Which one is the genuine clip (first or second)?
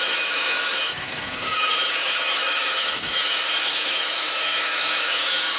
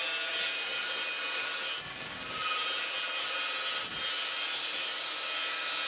second